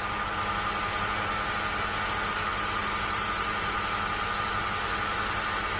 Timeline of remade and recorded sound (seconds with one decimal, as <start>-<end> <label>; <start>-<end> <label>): 0.0-5.8 recorded